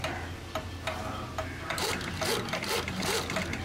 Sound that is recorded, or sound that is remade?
recorded